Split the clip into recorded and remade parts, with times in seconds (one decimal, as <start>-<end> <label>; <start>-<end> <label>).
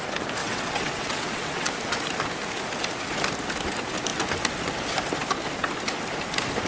0.0-0.4 recorded; 0.4-1.7 remade; 1.7-6.7 recorded